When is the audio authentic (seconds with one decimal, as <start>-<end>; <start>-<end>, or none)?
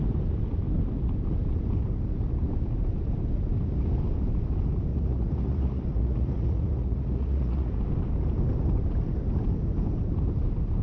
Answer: 0.0-4.9; 7.8-10.8